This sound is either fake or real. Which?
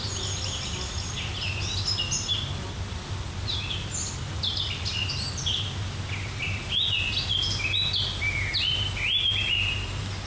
real